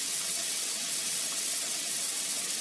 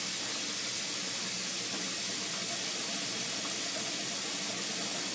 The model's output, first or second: first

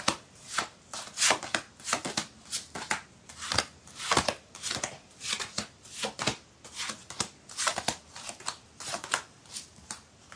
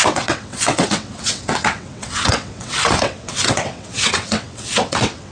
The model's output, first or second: second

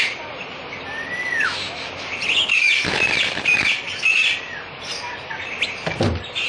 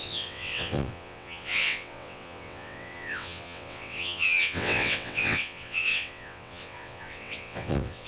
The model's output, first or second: second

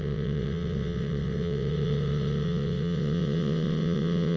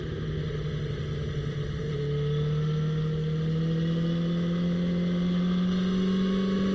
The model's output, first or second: first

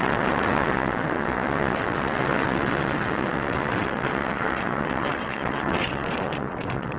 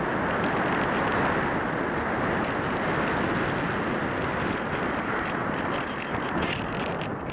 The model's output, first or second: first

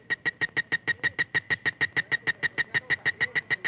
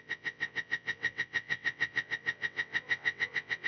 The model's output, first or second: second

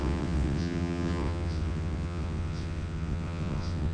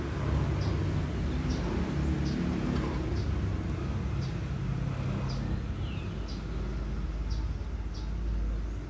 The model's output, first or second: first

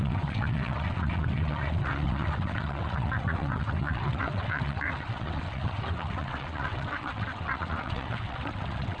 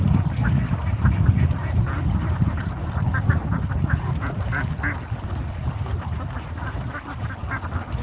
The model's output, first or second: first